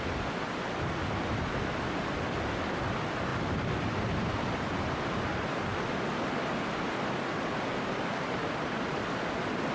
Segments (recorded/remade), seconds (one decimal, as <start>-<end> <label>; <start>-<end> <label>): 0.0-3.3 recorded; 3.3-4.1 remade; 4.1-9.7 recorded